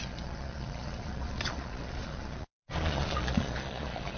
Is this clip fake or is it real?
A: fake